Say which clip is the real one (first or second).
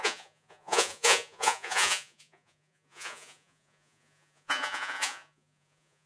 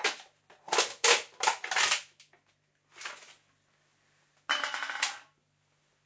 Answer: second